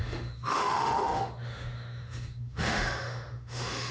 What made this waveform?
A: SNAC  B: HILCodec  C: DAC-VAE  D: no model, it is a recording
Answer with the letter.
C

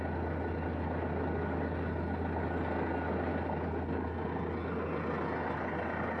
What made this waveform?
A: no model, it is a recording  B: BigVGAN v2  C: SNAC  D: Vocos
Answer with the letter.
A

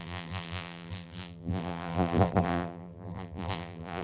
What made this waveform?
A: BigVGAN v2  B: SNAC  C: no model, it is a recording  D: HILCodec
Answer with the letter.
A